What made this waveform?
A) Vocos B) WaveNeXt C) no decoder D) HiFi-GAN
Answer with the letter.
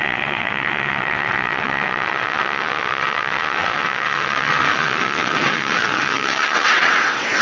B